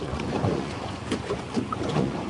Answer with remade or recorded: remade